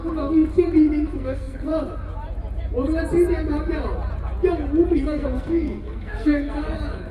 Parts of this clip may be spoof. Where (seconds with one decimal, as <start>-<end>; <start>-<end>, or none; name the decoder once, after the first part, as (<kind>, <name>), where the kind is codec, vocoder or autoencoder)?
0.0-1.7 (codec, SNAC); 4.9-7.1